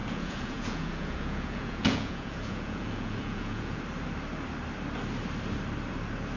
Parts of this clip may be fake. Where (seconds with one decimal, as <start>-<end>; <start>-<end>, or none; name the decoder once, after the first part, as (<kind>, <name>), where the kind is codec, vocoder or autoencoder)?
0.0-3.8 (vocoder, Vocos)